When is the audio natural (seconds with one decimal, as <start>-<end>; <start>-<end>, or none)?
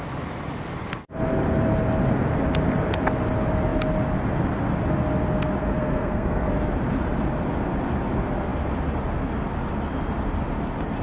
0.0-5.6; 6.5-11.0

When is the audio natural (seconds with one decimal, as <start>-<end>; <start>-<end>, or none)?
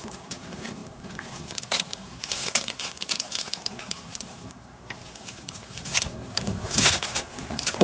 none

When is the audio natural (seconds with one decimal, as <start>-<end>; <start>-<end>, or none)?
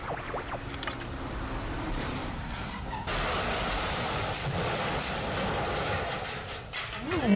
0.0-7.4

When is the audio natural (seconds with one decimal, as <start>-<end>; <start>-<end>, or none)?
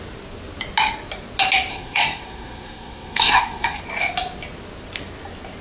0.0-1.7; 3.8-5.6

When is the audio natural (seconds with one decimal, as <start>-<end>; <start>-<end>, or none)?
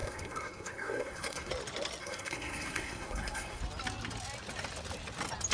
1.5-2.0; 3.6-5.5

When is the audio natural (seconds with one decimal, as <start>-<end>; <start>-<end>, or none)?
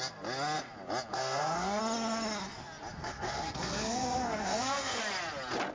0.0-1.1; 1.8-3.0; 5.0-5.7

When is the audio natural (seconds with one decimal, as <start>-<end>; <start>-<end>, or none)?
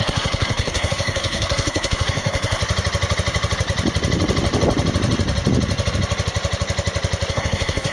2.6-7.3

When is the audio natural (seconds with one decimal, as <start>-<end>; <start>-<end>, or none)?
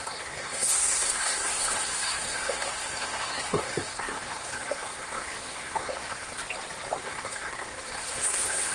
6.4-7.0